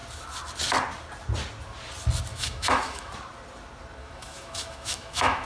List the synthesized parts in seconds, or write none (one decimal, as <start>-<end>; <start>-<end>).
2.3-3.1; 4.0-5.5